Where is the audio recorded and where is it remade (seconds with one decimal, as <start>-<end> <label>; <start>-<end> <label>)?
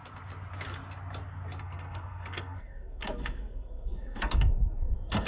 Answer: 0.0-1.6 recorded; 1.6-5.3 remade